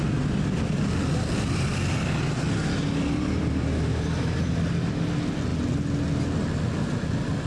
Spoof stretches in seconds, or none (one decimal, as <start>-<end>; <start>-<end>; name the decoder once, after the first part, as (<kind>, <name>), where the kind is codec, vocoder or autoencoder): none